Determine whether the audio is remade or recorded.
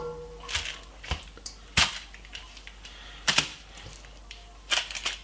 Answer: remade